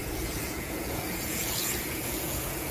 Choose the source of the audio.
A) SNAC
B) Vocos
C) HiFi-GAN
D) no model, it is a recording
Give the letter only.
B